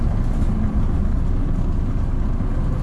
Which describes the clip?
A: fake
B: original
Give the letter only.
B